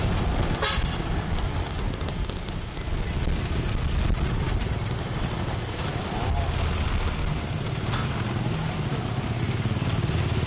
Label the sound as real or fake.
real